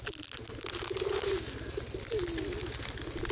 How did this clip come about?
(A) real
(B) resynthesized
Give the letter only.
A